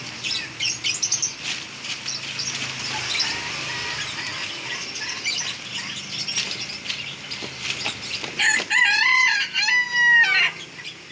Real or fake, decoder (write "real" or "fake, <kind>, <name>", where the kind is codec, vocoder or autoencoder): real